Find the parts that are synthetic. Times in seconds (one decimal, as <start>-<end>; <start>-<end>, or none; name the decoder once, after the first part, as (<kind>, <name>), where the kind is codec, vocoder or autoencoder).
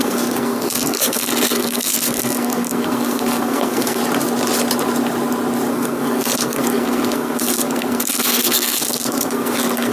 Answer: 0.0-4.0 (codec, SNAC); 5.7-9.9